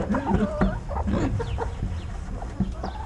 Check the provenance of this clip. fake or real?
real